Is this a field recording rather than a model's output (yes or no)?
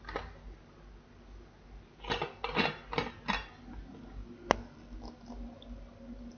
yes